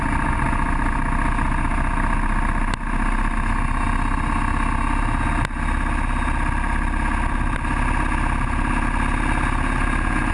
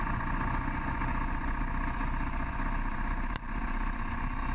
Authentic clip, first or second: first